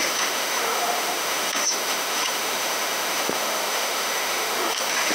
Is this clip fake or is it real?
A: fake